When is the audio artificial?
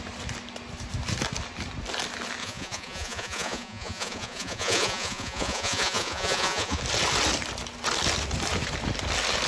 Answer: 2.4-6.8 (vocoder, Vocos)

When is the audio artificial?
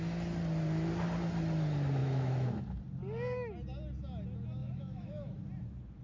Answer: 2.0-2.6 (autoencoder, DAC-VAE); 4.6-5.4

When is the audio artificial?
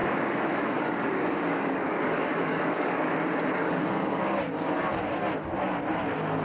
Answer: 0.0-3.1 (codec, DAC); 3.6-4.2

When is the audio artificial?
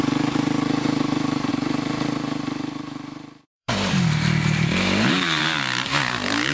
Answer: 0.0-6.5 (vocoder, BigVGAN v2)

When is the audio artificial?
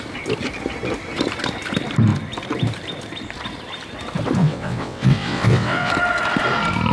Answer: 4.4-5.9 (vocoder, WaveNeXt)